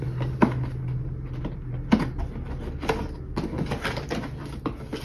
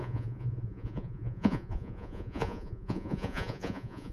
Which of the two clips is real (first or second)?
first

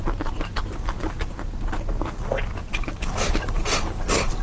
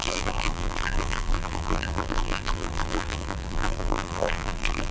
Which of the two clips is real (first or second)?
first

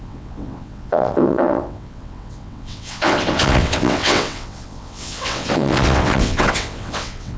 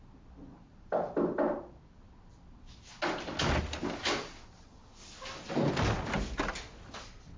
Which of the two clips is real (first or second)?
second